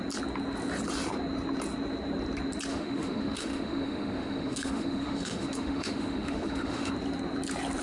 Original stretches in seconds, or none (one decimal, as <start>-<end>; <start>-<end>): 0.0-2.7; 6.9-7.8